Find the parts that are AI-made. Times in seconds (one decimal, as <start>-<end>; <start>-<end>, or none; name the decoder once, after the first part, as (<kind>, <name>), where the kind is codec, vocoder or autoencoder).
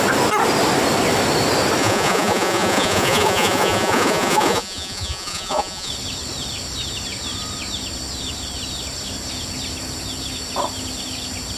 1.8-5.9 (vocoder, Vocos)